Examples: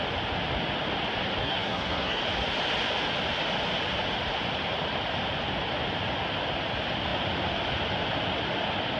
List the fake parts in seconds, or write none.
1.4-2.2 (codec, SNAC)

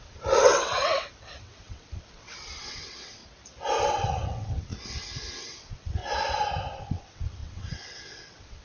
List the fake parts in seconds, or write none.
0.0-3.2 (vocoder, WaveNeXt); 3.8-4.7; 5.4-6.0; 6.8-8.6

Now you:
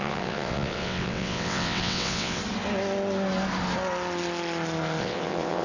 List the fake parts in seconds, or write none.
0.0-2.4 (vocoder, WaveNeXt); 5.0-5.6

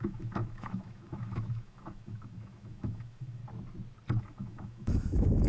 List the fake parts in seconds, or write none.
0.0-3.4 (autoencoder, DAC-VAE); 4.2-5.5

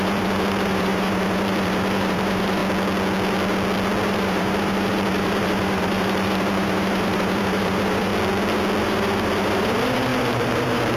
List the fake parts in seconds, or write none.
0.0-2.6 (vocoder, BigVGAN v2); 4.0-8.1; 8.8-11.0

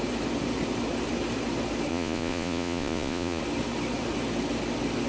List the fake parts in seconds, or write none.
1.9-3.4 (vocoder, Vocos)

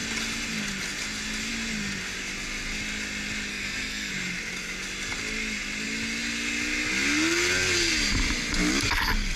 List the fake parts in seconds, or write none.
3.5-4.1 (codec, SNAC)

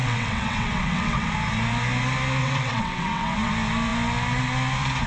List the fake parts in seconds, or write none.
0.0-1.3 (vocoder, WaveNeXt); 2.4-3.5